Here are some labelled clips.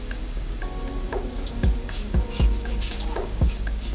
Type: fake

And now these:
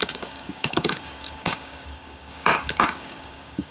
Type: fake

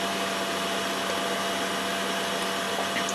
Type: real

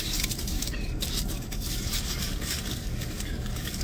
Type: fake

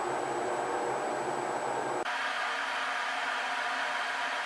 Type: real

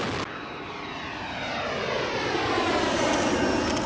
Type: real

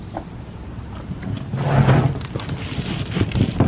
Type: real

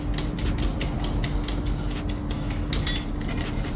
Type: real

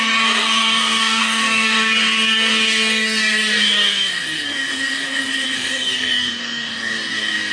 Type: fake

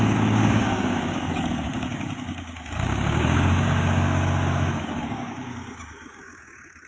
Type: fake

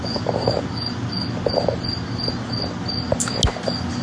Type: real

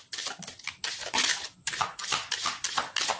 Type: real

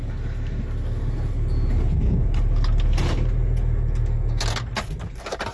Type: real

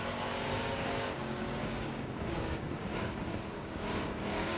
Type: fake